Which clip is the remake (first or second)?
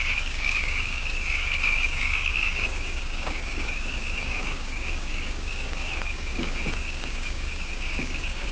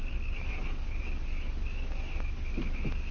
first